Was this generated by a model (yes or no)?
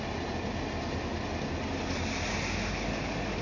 no